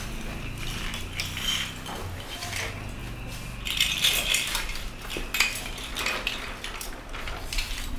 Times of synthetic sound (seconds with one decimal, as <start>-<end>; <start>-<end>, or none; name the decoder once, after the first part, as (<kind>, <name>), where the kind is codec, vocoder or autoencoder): none